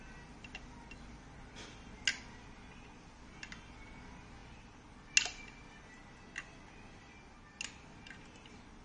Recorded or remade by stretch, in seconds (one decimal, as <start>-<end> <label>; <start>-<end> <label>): 0.0-8.8 recorded